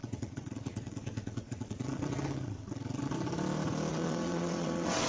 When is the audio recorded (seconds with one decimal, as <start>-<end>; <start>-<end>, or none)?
3.1-3.9